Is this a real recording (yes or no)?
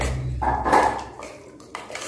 yes